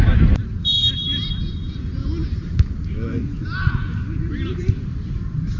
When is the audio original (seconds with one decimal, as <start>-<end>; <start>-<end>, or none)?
2.0-4.3